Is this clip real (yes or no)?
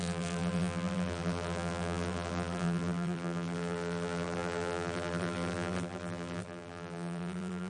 no